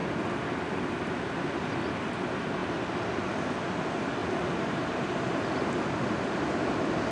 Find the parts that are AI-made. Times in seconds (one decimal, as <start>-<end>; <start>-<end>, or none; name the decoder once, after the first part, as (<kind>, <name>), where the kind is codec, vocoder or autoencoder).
2.6-3.1 (vocoder, BigVGAN v2); 4.2-5.6